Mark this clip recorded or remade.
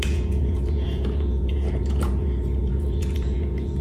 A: remade